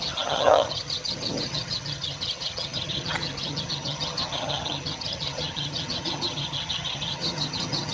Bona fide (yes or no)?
no